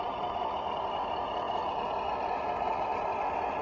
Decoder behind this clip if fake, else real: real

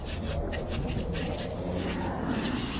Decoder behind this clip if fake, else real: real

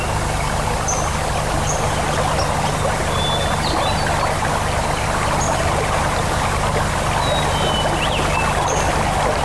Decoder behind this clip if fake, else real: real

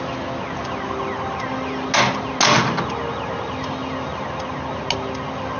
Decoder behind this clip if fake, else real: real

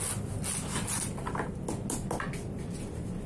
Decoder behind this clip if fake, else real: real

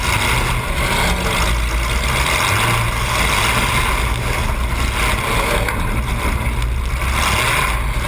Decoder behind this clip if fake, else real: real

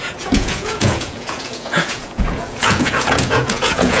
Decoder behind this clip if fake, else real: fake, vocoder, Vocos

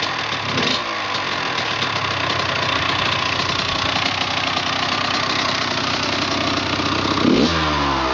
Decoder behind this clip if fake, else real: real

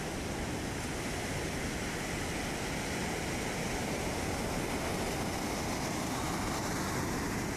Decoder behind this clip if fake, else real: real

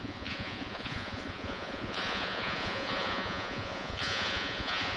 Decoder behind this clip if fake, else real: fake, vocoder, Vocos